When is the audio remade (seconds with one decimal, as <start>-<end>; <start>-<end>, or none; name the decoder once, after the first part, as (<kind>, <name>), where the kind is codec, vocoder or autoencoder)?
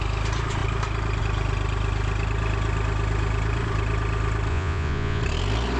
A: 4.5-5.2 (vocoder, Vocos)